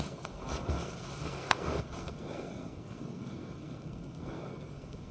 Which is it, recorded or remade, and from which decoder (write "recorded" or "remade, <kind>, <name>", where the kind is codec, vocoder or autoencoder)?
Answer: remade, codec, SNAC